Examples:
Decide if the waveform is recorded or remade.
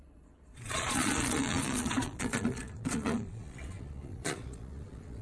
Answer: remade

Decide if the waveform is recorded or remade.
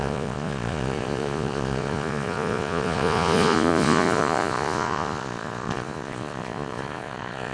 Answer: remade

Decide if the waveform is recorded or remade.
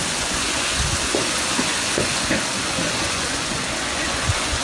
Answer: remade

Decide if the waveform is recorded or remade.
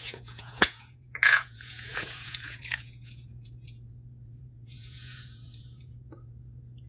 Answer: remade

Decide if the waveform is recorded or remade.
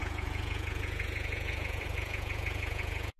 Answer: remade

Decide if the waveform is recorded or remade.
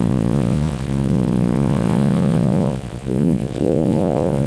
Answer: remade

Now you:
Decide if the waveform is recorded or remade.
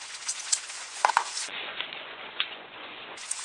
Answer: remade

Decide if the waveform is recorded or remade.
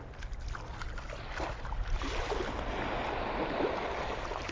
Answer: recorded